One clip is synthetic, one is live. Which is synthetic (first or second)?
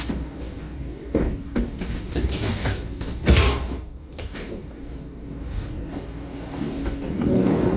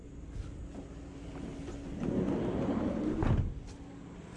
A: first